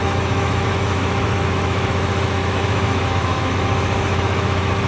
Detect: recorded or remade remade